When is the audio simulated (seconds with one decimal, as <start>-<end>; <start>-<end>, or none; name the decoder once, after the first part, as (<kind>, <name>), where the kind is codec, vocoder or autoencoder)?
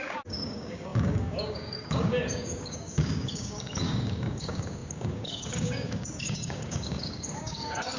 0.0-8.0 (codec, DAC)